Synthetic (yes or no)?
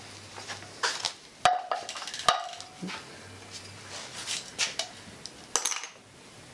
no